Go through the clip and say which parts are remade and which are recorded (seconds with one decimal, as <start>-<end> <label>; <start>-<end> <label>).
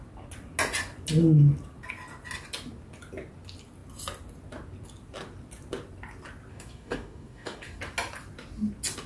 0.0-6.5 recorded; 6.5-7.8 remade; 7.8-9.1 recorded